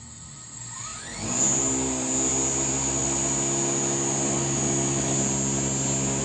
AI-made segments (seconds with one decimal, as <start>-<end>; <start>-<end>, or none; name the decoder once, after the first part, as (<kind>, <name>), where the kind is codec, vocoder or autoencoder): none